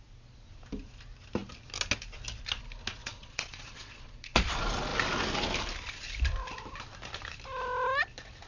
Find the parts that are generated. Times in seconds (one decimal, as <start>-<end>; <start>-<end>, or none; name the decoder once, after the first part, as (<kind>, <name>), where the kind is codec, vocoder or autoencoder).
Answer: 3.0-4.5 (vocoder, Vocos)

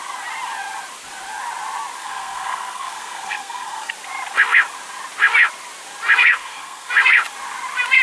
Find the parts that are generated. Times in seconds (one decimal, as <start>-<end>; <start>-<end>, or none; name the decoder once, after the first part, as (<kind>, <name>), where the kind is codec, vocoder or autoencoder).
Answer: 2.0-3.9 (codec, SNAC); 6.3-6.9

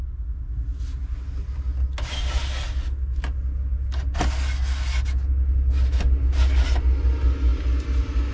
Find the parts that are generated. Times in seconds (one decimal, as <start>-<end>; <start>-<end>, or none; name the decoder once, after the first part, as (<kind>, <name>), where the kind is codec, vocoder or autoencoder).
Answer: none

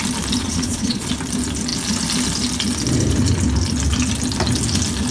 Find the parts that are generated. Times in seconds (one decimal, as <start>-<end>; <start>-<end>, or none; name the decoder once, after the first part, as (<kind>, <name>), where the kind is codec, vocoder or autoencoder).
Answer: 0.4-1.1 (vocoder, Vocos)